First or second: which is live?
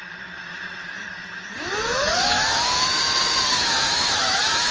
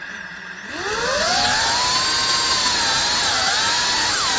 second